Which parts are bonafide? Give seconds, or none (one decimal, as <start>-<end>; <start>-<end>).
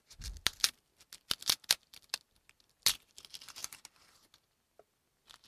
0.0-5.5